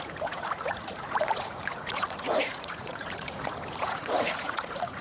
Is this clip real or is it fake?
fake